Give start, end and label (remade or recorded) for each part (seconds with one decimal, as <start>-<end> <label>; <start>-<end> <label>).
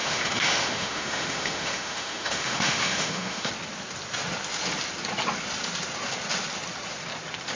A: 0.0-3.5 remade; 3.5-7.6 recorded